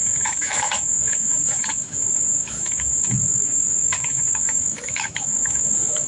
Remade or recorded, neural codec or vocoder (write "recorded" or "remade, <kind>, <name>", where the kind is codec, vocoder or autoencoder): remade, autoencoder, DAC-VAE